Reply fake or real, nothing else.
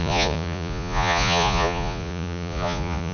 fake